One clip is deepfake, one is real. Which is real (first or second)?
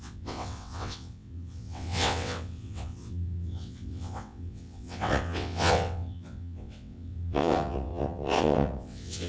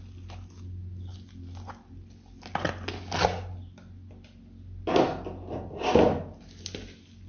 second